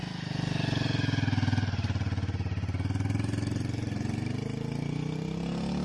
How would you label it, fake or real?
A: real